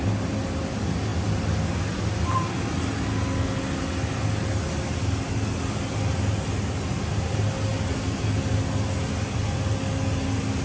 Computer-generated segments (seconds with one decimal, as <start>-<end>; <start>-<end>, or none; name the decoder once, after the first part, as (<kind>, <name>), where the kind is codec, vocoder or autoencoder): none